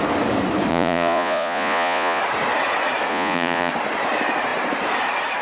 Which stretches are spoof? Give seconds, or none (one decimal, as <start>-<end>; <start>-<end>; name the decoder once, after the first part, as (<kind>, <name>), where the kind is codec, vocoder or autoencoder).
0.7-2.2 (vocoder, Vocos); 3.1-3.7